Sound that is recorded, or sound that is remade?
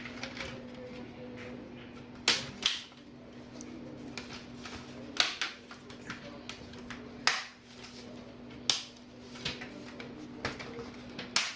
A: recorded